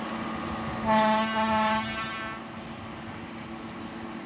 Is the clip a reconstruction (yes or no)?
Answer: no